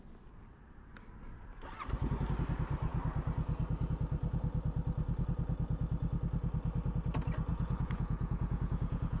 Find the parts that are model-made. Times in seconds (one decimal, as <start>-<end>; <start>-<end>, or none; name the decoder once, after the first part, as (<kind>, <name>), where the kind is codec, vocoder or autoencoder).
7.5-9.2 (vocoder, Vocos)